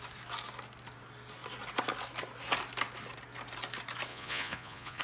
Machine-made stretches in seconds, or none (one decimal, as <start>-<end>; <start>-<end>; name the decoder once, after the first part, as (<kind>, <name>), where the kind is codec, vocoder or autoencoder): 4.1-5.0 (vocoder, Vocos)